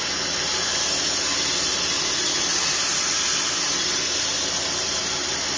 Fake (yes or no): no